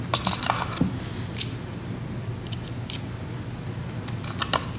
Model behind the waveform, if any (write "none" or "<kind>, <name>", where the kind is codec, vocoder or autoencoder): none